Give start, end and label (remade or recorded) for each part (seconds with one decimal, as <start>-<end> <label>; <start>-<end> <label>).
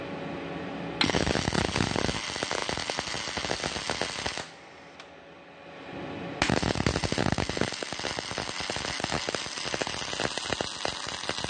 0.0-11.5 recorded